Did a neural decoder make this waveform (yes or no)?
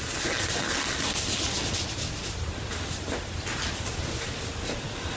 no